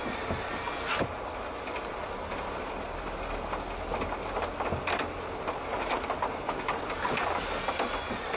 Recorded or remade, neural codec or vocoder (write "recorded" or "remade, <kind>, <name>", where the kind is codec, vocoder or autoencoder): recorded